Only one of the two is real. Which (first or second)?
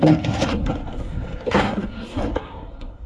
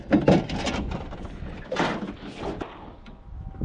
second